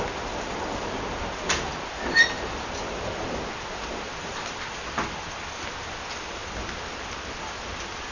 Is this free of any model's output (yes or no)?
yes